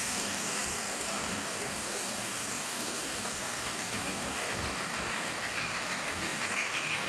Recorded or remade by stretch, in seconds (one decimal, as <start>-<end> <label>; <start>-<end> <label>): 0.0-7.1 remade